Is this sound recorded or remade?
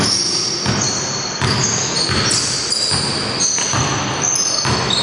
recorded